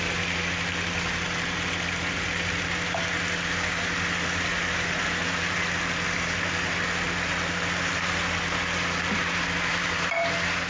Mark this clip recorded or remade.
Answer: remade